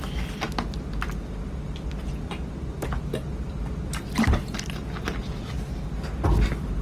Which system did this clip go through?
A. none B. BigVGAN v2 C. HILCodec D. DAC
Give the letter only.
A